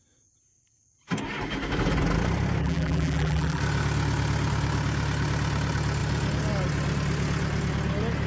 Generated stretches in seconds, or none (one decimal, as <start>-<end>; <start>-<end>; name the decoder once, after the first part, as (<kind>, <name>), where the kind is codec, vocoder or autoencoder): 2.6-3.6 (vocoder, BigVGAN v2)